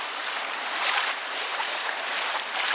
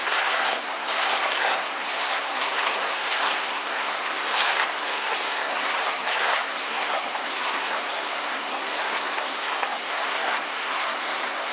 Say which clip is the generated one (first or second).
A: second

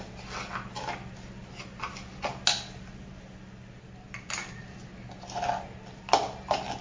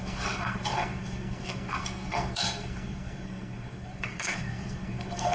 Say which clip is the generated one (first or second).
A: second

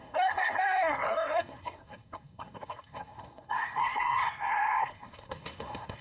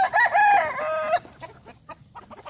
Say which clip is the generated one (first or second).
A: first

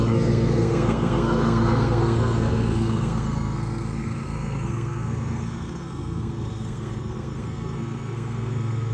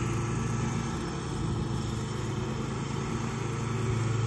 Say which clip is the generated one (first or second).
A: first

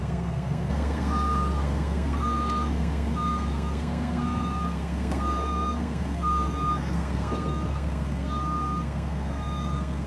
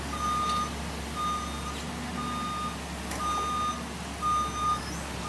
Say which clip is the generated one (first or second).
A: first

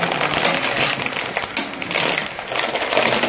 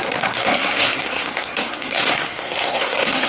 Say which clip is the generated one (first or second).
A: second